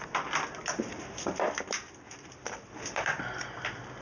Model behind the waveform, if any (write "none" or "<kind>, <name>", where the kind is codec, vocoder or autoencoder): vocoder, BigVGAN v2